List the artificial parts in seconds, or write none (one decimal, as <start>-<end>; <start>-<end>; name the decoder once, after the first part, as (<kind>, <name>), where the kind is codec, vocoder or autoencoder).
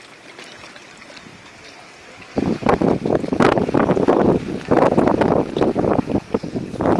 none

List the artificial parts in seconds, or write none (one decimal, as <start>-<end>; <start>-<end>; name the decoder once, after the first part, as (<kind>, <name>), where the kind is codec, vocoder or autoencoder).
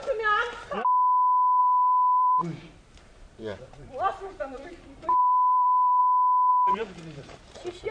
1.6-4.8 (vocoder, BigVGAN v2); 5.2-6.0; 6.5-7.3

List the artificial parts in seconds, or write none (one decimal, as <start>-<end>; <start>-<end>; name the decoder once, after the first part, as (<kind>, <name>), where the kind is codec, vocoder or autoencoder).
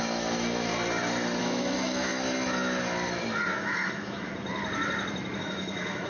0.0-0.7 (autoencoder, DAC-VAE); 1.4-2.1; 3.6-4.3; 5.4-6.1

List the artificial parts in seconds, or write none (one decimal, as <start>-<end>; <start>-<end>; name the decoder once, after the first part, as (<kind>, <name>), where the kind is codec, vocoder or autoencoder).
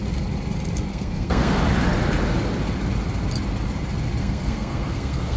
0.9-1.6 (codec, SNAC); 4.2-5.4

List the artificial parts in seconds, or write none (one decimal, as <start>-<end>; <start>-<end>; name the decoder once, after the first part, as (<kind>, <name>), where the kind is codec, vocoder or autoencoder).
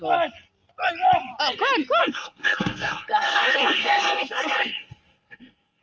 2.0-5.8 (codec, SNAC)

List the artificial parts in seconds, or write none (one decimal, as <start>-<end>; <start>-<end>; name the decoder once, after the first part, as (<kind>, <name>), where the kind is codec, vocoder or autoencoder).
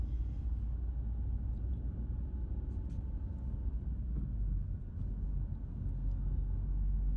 5.7-7.2 (codec, SNAC)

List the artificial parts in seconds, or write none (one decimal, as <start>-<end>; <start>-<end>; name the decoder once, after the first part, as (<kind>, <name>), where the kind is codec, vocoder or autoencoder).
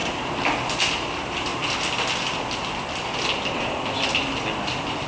none